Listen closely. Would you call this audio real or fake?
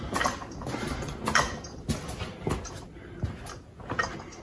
real